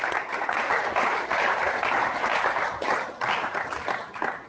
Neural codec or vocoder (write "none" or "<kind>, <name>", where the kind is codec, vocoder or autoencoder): none